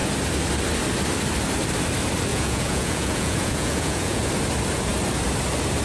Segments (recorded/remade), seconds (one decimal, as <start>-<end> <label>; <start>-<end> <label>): 0.0-2.3 recorded; 2.3-4.3 remade; 4.3-5.8 recorded